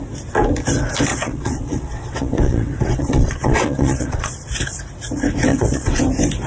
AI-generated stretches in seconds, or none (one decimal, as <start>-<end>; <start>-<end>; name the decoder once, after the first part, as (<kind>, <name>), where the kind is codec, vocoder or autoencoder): 1.1-4.3 (vocoder, WaveNeXt); 5.5-6.0